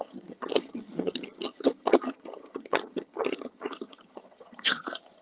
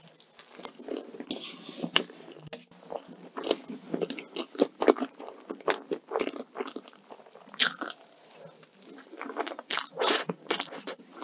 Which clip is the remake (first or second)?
first